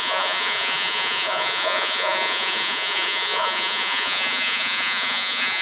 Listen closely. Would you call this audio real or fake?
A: fake